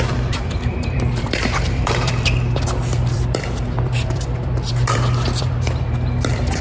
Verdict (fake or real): fake